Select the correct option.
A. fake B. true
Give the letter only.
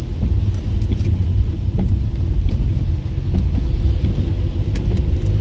B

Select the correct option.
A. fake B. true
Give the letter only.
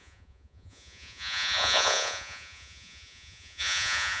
A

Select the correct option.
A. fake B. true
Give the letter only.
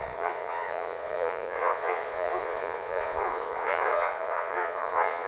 A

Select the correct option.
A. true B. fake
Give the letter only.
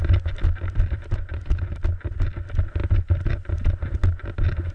A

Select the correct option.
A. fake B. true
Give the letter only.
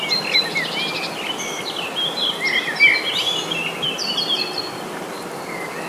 B